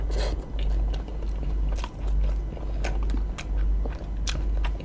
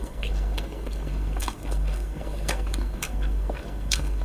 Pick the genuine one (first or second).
first